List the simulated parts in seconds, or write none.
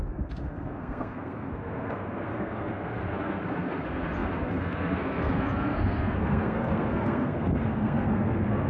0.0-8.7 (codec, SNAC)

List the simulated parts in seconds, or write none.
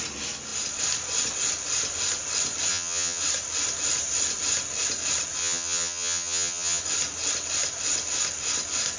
2.7-3.2 (vocoder, HiFi-GAN); 5.4-6.8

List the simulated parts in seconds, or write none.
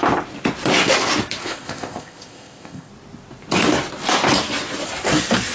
1.4-2.9 (codec, ZipCodec)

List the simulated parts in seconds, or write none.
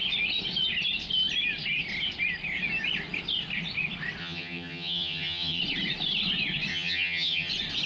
4.2-5.6 (vocoder, HiFi-GAN); 6.7-7.5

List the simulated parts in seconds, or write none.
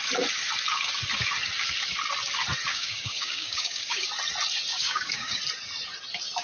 2.7-4.1 (codec, DAC); 4.7-5.4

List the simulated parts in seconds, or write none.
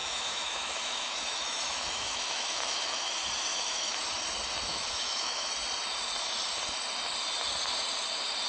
0.0-3.1 (autoencoder, DAC-VAE); 3.5-4.0; 4.7-5.5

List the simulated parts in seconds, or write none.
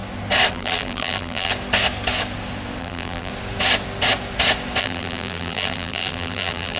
0.5-1.5 (vocoder, BigVGAN v2); 2.8-3.3; 4.8-6.8